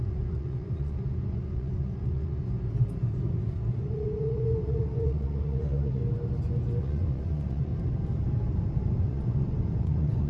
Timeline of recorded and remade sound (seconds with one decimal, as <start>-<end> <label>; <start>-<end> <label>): 0.0-2.4 remade; 2.4-3.7 recorded; 3.7-6.0 remade; 6.0-6.8 recorded; 6.8-7.7 remade; 7.7-9.0 recorded; 9.0-10.3 remade